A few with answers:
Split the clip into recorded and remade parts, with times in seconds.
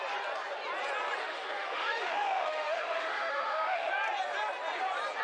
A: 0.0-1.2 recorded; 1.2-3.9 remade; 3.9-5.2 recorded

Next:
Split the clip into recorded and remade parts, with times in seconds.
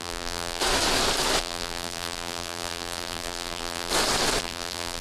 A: 0.0-0.6 remade; 0.6-1.4 recorded; 1.4-3.9 remade; 3.9-4.4 recorded; 4.4-5.0 remade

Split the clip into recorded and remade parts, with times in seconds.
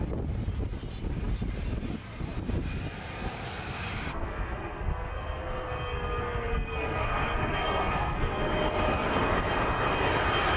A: 0.0-4.1 recorded; 4.1-8.5 remade; 8.5-10.6 recorded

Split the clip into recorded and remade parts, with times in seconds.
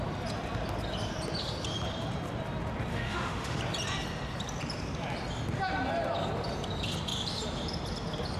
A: 0.0-2.9 recorded; 2.9-3.6 remade; 3.6-8.4 recorded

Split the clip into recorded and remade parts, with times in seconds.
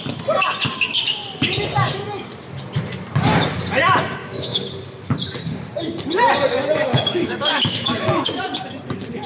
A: 0.0-4.2 recorded; 4.2-4.7 remade; 4.7-6.9 recorded; 6.9-8.4 remade; 8.4-9.3 recorded